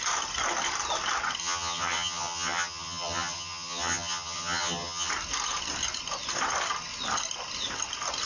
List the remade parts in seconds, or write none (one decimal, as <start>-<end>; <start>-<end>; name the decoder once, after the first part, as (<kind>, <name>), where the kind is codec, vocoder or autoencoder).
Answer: 1.4-5.1 (vocoder, HiFi-GAN)